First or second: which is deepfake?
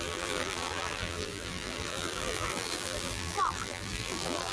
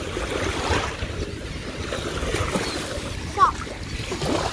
first